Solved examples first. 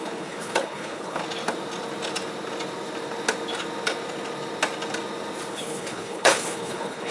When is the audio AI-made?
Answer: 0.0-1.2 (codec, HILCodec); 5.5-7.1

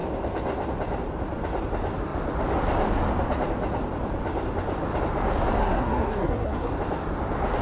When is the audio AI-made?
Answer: 5.6-6.7 (codec, SNAC)

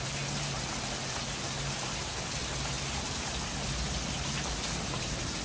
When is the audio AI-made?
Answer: none